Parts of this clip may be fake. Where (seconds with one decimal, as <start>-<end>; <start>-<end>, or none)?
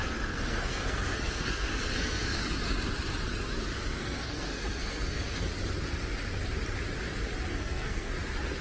0.0-2.4; 4.0-5.5; 7.5-8.1